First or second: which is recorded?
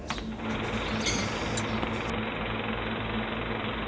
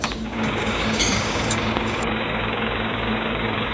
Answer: first